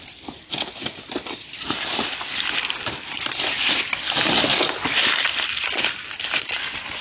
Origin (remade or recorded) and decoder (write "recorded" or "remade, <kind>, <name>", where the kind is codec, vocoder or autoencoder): remade, vocoder, BigVGAN v2